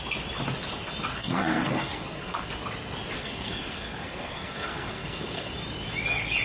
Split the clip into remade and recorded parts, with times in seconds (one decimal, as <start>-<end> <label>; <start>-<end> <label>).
0.0-1.1 recorded; 1.1-2.5 remade; 2.5-3.2 recorded; 3.2-5.5 remade; 5.5-6.4 recorded